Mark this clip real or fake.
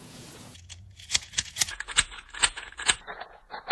fake